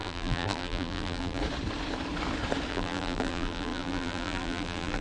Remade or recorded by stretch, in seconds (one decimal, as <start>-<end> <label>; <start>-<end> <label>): 0.0-1.4 remade; 1.4-2.7 recorded; 2.7-5.0 remade